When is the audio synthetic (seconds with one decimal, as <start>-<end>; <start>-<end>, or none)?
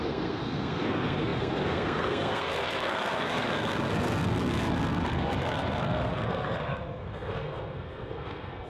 0.0-8.7